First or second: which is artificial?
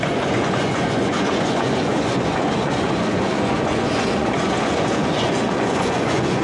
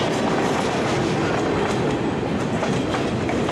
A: first